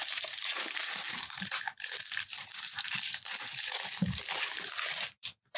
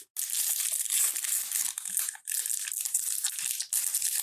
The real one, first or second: second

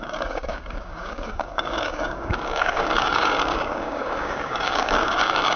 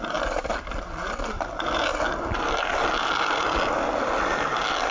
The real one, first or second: second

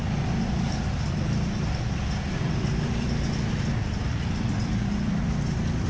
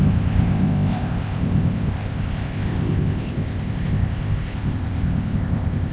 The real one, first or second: first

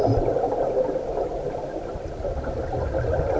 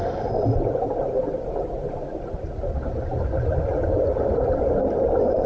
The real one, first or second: second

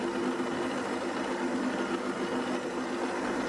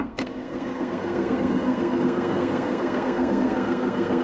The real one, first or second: first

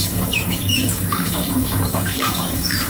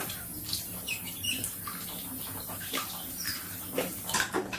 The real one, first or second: second